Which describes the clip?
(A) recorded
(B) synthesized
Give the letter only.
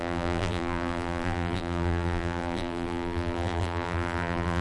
B